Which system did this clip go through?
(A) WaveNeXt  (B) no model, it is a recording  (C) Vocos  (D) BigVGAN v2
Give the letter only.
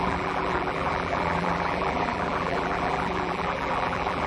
D